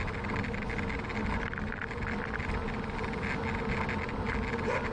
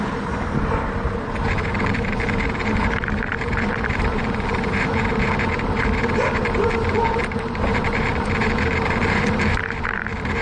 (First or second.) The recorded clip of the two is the first